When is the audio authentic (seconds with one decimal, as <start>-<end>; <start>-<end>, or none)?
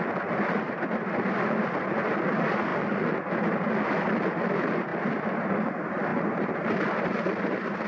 0.0-4.9; 5.5-7.9